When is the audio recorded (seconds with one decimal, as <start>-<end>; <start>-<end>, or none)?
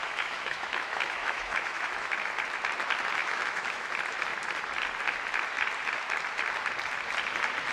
2.3-3.2; 3.9-7.7